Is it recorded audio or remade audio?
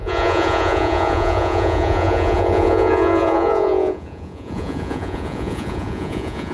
remade